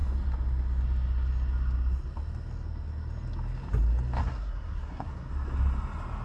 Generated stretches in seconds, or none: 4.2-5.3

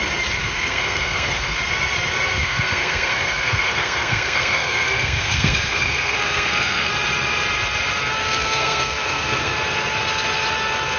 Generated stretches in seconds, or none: 0.4-1.6; 2.4-6.9; 8.2-9.5

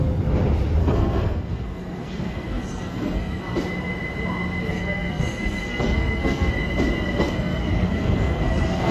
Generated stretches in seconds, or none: 0.8-3.4; 4.7-6.5; 7.2-8.9

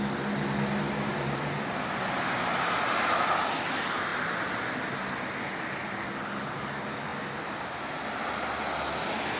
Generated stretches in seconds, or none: none

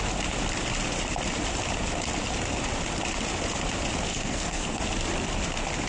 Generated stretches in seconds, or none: 4.1-4.8